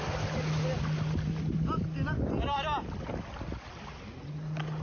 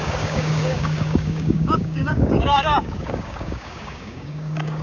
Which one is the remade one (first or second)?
second